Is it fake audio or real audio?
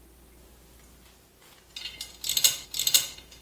real